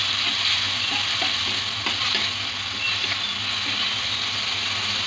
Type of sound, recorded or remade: recorded